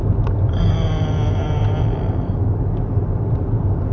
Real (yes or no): yes